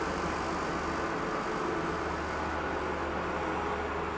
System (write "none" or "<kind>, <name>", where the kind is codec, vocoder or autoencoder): none